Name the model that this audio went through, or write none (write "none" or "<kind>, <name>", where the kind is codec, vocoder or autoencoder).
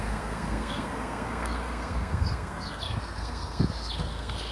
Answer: codec, SNAC